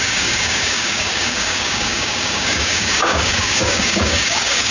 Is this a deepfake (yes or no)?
yes